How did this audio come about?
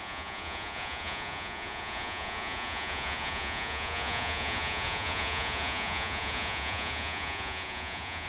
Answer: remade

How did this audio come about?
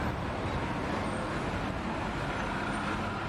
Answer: recorded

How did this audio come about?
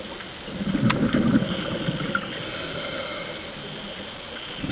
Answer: recorded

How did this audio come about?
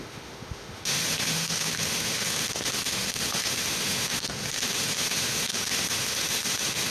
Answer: remade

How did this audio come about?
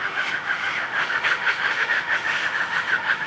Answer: remade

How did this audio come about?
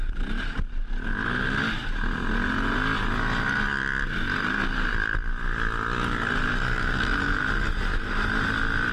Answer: recorded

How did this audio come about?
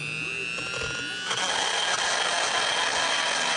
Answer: recorded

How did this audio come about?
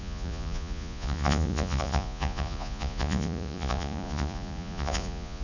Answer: remade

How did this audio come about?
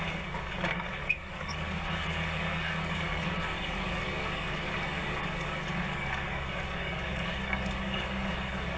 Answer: remade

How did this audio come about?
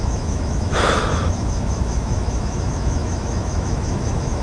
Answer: remade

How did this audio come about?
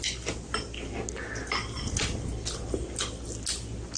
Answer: recorded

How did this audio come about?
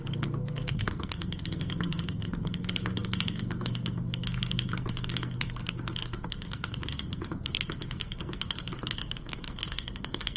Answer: remade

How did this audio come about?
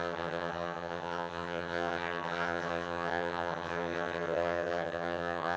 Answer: remade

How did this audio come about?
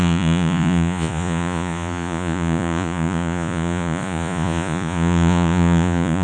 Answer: remade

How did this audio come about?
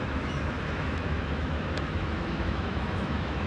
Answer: remade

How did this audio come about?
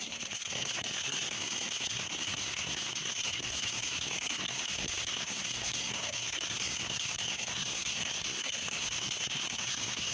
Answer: remade